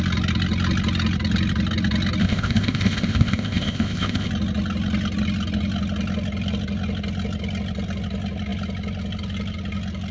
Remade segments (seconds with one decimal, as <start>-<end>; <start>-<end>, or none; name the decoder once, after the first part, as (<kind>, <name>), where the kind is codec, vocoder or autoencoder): 2.2-4.3 (codec, ZipCodec)